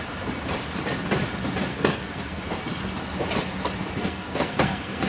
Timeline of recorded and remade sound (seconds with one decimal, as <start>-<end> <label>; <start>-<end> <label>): 0.0-1.7 recorded; 1.7-2.4 remade; 2.4-4.0 recorded; 4.0-5.1 remade